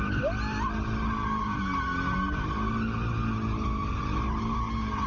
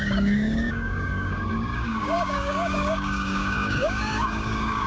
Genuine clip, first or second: first